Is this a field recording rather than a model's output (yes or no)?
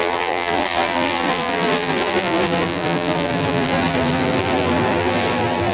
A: no